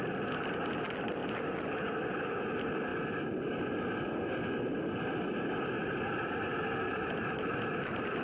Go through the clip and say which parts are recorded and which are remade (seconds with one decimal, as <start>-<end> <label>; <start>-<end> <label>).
0.0-8.2 recorded